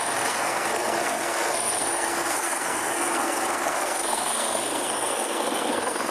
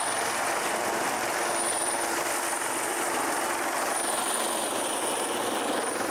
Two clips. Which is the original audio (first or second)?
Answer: second